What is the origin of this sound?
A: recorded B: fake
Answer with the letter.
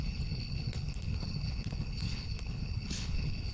B